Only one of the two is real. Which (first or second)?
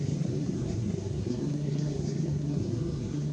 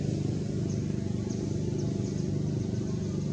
second